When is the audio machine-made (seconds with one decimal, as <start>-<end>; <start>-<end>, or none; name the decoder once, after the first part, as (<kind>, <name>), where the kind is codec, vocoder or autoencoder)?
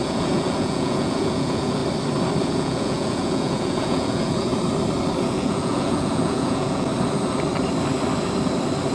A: 0.0-1.8 (vocoder, Vocos); 2.4-4.5; 5.2-6.9